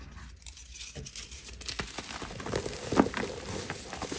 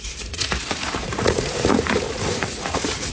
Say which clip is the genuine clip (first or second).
first